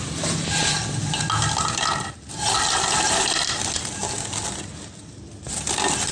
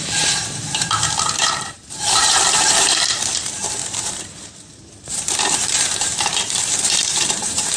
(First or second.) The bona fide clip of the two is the first